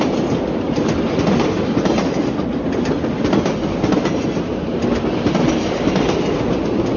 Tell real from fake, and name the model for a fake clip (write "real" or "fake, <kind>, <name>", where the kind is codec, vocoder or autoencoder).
real